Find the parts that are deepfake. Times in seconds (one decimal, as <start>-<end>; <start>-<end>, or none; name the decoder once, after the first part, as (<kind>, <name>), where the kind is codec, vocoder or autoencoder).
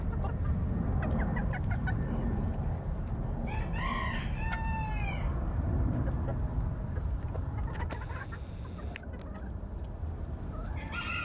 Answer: 1.4-2.4 (vocoder, BigVGAN v2)